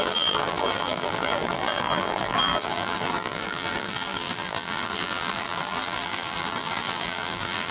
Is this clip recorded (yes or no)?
no